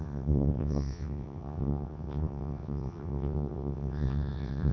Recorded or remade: remade